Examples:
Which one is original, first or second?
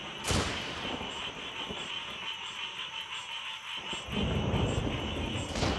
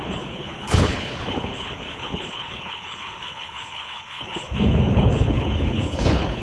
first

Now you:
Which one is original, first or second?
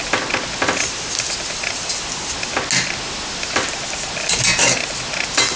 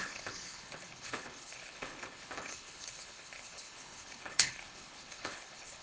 first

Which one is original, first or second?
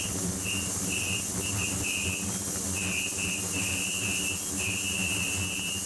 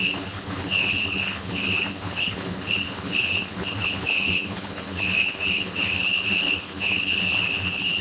first